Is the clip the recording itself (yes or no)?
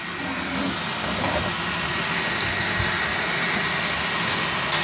yes